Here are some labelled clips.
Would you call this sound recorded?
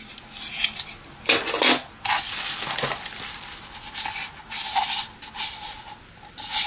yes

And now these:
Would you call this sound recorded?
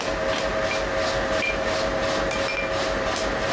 yes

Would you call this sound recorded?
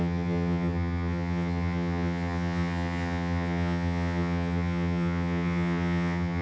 no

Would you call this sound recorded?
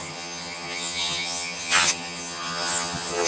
no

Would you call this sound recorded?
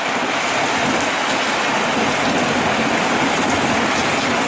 yes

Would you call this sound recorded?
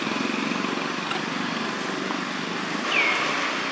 yes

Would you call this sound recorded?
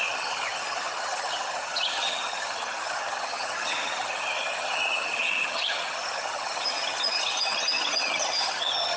no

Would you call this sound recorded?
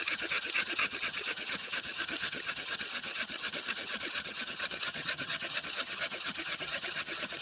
no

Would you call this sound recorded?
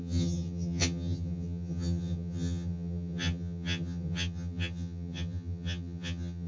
no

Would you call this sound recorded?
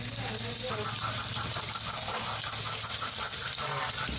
yes